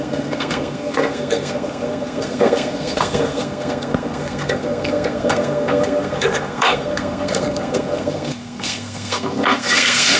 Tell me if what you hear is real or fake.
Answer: fake